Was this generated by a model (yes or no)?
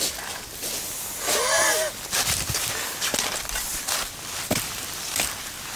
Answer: no